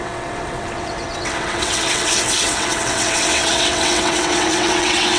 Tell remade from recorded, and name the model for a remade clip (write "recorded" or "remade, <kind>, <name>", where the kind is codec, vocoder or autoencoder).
remade, vocoder, WaveNeXt